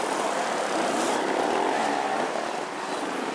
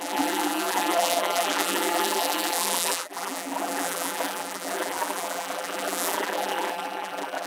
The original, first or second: first